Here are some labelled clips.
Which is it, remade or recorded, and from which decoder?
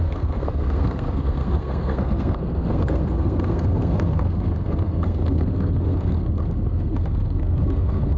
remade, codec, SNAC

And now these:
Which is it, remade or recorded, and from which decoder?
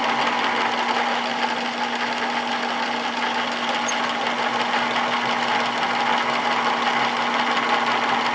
recorded